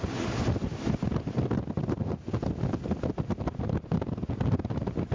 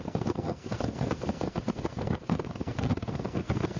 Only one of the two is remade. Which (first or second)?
second